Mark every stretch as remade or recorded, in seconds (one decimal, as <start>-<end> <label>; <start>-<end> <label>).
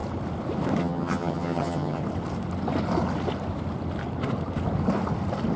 0.0-0.8 recorded; 0.8-2.0 remade; 2.0-5.6 recorded